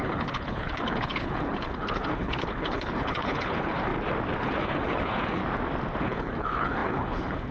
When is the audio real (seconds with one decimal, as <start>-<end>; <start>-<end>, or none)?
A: 3.9-4.4; 5.4-6.0